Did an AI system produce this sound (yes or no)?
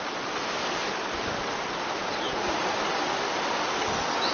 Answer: no